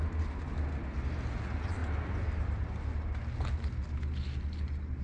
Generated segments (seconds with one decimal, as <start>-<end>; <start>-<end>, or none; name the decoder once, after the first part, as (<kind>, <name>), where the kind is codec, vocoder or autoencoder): none